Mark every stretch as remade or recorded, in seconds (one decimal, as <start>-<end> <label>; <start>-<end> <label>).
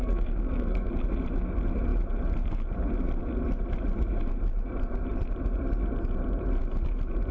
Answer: 0.0-0.9 remade; 0.9-7.3 recorded